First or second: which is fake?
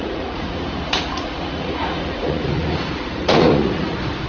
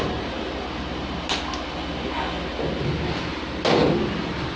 first